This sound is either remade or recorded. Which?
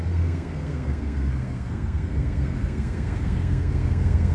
remade